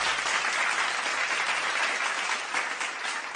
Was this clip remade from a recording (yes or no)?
no